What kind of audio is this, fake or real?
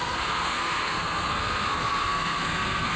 fake